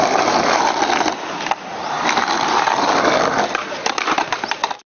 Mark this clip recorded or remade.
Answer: recorded